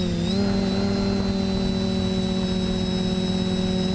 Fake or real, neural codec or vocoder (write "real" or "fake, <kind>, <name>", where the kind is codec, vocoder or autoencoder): real